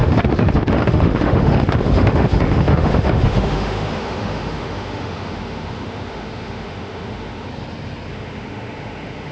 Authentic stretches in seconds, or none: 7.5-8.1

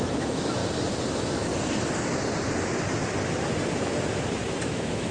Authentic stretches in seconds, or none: 0.6-1.1; 1.5-4.6

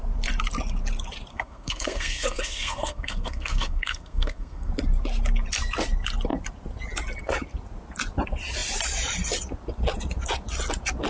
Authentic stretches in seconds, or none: 0.0-1.3; 4.7-11.1

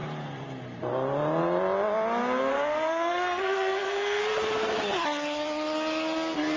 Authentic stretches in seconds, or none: 0.0-2.5; 4.2-6.6